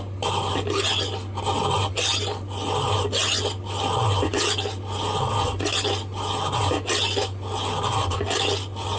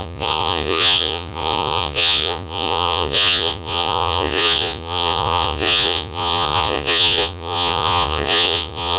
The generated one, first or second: second